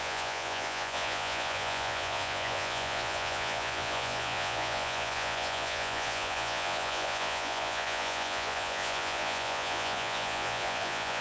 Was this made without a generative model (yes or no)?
no